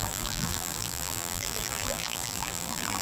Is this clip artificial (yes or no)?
yes